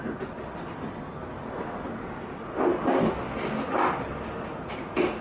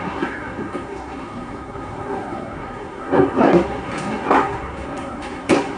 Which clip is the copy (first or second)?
second